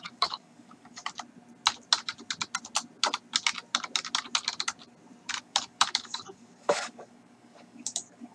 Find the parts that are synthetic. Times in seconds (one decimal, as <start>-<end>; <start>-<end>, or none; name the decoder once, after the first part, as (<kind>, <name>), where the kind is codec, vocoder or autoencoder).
0.0-1.0 (codec, DAC); 5.4-8.3